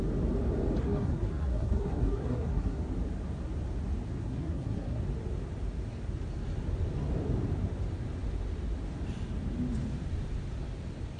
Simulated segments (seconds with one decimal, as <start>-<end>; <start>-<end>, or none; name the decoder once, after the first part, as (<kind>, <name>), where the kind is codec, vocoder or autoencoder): 0.8-2.8 (codec, SNAC); 4.2-5.0